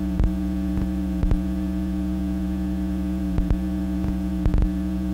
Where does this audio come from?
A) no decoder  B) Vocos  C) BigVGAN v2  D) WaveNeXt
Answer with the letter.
B